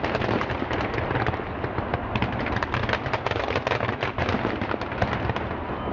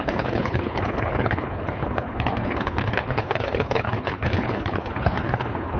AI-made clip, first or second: second